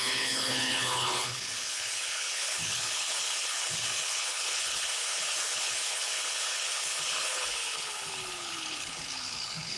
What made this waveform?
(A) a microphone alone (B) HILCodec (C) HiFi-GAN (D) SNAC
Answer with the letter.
B